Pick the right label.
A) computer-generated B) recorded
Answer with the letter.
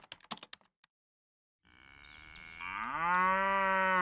B